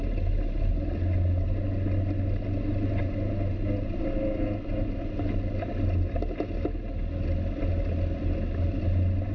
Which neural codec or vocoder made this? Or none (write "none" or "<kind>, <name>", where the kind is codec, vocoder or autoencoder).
none